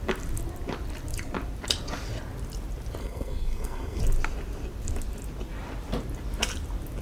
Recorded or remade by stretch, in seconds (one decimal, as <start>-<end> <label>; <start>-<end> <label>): 0.0-3.0 recorded; 3.0-4.0 remade; 4.0-7.0 recorded